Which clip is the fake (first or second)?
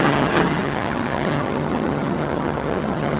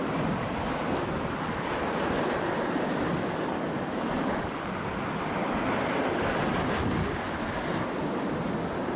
first